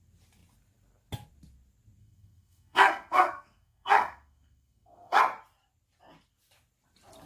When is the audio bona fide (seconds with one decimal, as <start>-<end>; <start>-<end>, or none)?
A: 0.0-2.0; 5.2-7.3